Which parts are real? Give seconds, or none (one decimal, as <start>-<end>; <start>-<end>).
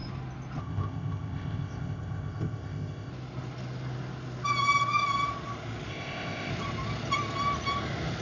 0.0-0.6; 3.1-5.9; 6.5-8.2